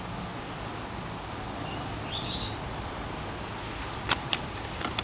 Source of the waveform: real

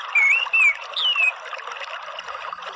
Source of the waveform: real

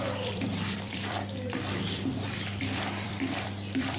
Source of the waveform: fake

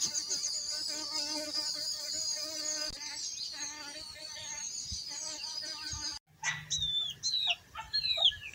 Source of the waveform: real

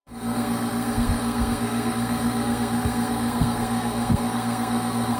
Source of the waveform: fake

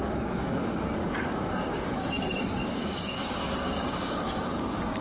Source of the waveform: fake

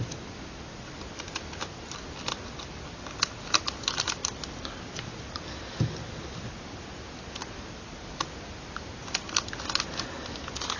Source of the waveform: real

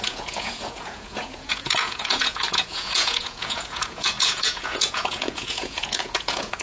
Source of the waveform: fake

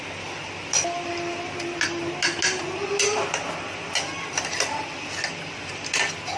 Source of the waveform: real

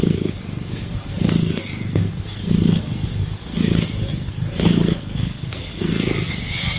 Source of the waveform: fake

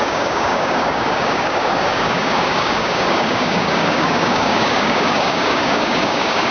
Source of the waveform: fake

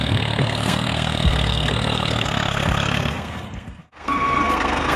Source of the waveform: fake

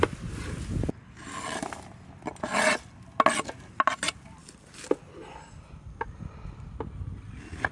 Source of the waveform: real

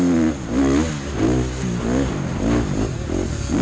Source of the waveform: real